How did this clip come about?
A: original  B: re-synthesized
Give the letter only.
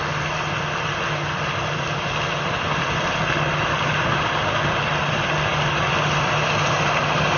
A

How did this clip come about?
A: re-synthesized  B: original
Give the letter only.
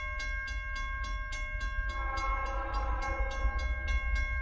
B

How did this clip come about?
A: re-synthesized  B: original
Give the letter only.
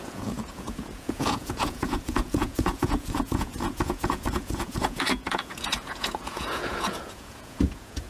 A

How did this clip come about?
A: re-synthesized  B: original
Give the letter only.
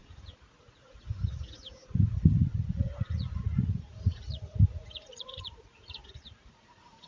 A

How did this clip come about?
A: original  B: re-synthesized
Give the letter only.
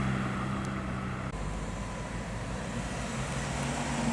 A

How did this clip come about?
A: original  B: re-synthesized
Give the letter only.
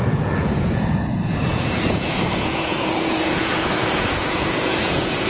B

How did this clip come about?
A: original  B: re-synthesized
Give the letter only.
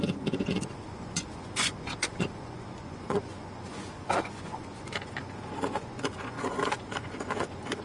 B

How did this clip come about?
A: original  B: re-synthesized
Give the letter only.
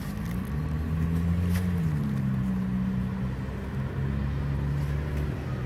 A